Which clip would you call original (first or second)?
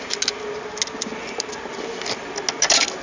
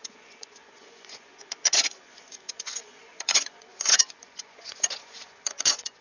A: first